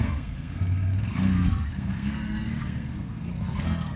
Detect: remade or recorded remade